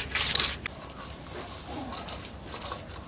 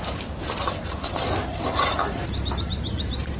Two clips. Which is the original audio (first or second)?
first